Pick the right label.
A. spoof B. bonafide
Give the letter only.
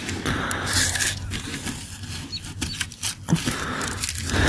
B